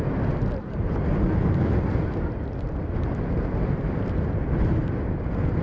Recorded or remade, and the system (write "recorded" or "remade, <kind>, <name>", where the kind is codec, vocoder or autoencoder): recorded